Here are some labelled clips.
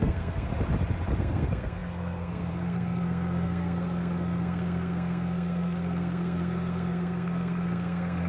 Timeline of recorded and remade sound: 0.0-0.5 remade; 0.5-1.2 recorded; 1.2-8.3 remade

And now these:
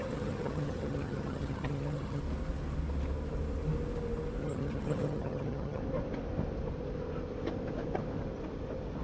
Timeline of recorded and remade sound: 0.0-2.2 remade; 2.2-4.4 recorded; 4.4-5.8 remade; 5.8-9.0 recorded